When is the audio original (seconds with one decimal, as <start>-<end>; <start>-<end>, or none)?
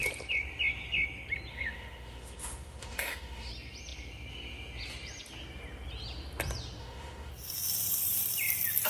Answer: 0.0-1.5; 3.5-6.8; 7.3-8.9